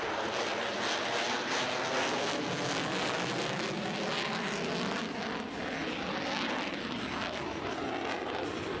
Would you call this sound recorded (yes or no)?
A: yes